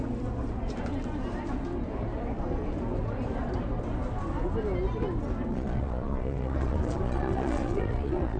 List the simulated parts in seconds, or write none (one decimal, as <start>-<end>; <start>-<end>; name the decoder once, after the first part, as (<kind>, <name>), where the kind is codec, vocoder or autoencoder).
5.5-8.4 (vocoder, Vocos)